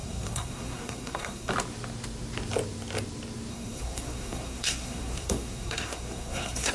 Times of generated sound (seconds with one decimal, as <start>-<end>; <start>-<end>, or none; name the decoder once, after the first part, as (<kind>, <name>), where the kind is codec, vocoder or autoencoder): 0.0-1.5 (codec, SNAC); 3.5-6.7